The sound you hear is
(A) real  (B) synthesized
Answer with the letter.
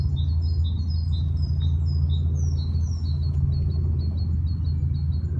A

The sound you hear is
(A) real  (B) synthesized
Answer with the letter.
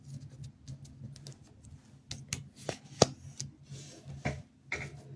A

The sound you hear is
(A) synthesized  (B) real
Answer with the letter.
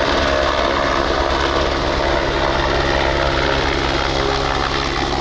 B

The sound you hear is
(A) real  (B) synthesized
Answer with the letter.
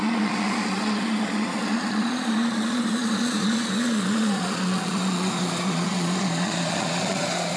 B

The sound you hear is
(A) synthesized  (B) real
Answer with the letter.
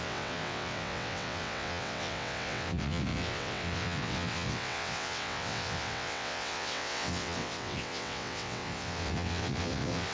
A